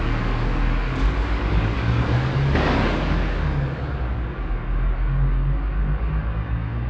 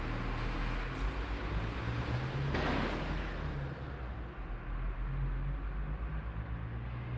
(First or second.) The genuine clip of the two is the second